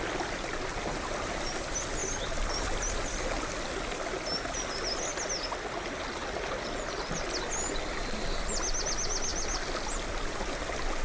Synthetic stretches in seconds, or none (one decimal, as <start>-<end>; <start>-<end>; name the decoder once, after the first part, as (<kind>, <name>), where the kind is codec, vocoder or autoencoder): none